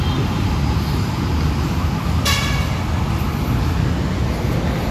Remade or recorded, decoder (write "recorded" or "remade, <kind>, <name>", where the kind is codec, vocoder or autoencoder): recorded